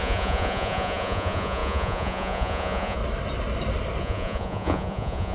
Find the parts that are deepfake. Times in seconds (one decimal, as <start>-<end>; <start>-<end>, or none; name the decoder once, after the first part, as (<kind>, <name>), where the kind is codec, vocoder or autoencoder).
0.0-3.0 (vocoder, Vocos); 4.0-5.3